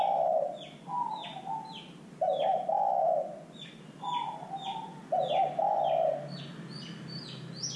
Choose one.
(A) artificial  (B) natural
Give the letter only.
B